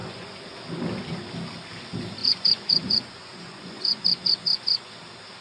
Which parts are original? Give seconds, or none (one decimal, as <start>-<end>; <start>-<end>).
0.5-2.2; 5.0-5.4